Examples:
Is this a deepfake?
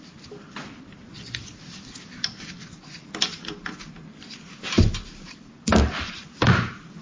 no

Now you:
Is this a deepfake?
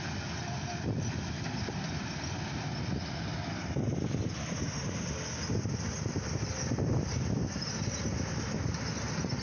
no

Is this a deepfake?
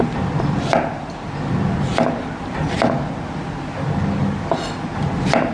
no